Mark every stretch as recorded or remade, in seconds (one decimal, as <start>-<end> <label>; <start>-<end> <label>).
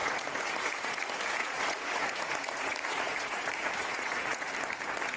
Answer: 0.0-1.0 remade; 1.0-1.4 recorded; 1.4-4.5 remade; 4.5-5.2 recorded